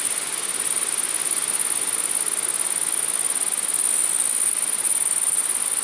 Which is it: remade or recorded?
recorded